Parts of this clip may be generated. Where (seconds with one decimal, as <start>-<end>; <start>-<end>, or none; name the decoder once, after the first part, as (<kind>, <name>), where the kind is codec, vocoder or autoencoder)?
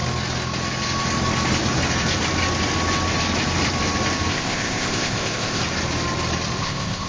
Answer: 4.3-5.6 (codec, ZipCodec); 6.6-7.1